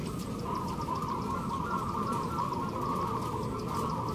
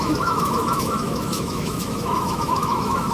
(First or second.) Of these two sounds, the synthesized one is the second